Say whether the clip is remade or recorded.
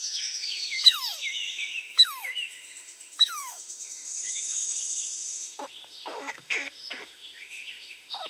remade